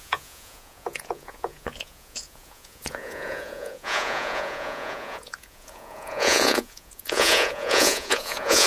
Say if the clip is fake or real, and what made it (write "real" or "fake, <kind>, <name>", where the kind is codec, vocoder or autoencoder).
fake, vocoder, Vocos